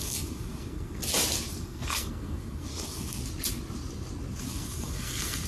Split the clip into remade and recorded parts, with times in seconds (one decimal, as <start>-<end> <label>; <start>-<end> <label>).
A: 0.0-1.0 remade; 1.0-1.5 recorded; 1.5-3.2 remade; 3.2-4.4 recorded; 4.4-5.5 remade